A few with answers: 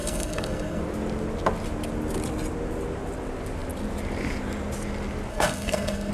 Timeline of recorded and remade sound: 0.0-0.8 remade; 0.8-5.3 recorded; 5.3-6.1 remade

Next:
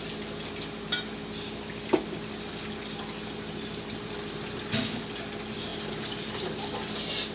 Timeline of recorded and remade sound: 0.0-7.3 recorded

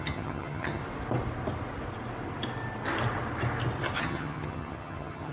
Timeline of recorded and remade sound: 0.0-0.8 remade; 0.8-4.0 recorded; 4.0-5.3 remade

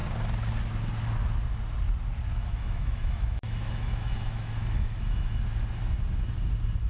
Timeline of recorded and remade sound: 0.0-2.3 recorded; 2.3-5.4 remade; 5.4-6.9 recorded

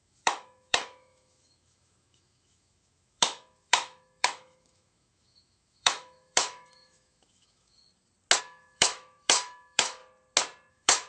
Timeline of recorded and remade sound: 0.0-7.8 remade; 7.8-8.4 recorded; 8.4-10.0 remade; 10.0-10.7 recorded; 10.7-11.1 remade